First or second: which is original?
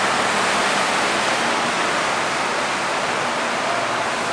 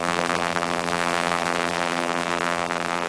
first